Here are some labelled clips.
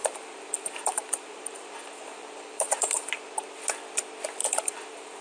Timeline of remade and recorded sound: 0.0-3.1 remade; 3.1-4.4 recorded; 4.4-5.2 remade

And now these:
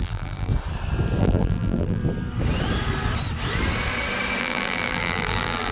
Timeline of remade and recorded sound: 0.0-0.5 remade; 0.5-1.2 recorded; 1.2-2.0 remade; 2.0-4.4 recorded; 4.4-5.7 remade

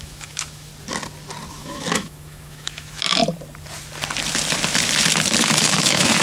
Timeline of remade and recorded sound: 0.0-0.7 remade; 0.7-1.5 recorded; 1.5-3.2 remade; 3.2-5.4 recorded; 5.4-6.2 remade

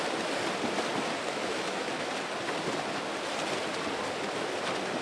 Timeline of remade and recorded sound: 0.0-1.3 recorded; 1.3-2.1 remade; 2.1-5.0 recorded